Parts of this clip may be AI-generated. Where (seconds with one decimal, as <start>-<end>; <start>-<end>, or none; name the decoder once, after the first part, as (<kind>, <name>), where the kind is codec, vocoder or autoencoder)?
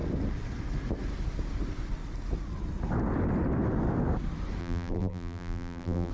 4.6-6.1 (vocoder, BigVGAN v2)